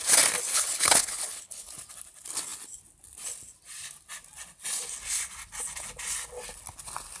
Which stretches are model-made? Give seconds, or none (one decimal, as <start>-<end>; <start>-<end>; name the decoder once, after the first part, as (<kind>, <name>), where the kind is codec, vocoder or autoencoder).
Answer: 0.5-1.7 (codec, HILCodec)